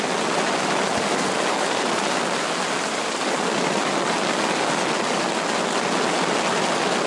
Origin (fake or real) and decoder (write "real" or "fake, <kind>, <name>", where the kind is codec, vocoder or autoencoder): real